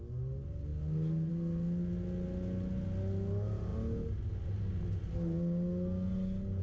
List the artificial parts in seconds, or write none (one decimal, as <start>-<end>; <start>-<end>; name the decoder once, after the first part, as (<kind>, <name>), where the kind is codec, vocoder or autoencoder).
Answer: none